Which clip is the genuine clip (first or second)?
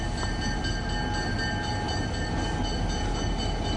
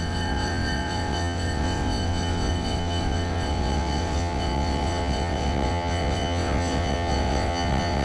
first